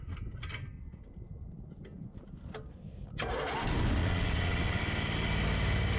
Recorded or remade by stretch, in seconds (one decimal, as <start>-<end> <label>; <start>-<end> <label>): 0.0-4.0 recorded; 4.0-4.8 remade; 4.8-6.0 recorded